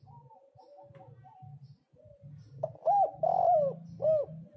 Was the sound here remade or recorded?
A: recorded